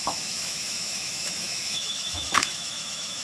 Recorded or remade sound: remade